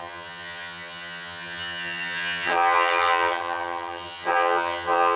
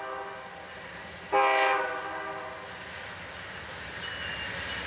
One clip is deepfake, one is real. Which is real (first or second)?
second